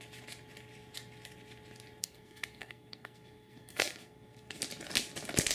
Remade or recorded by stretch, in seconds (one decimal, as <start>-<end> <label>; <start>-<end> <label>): 0.0-2.0 recorded; 2.0-4.6 remade; 4.6-5.5 recorded